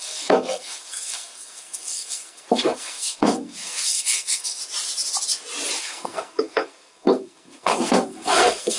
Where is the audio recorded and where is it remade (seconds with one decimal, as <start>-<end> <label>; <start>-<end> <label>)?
0.0-4.6 remade; 4.6-5.8 recorded; 5.8-8.8 remade